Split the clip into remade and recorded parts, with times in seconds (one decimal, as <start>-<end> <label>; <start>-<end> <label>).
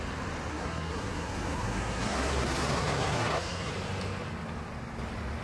0.0-0.5 recorded; 0.5-3.7 remade; 3.7-5.4 recorded